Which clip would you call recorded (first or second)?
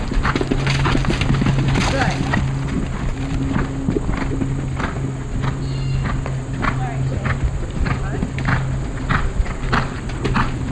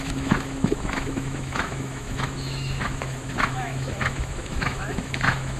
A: first